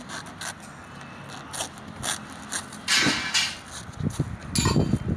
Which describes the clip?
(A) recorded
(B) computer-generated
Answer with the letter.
A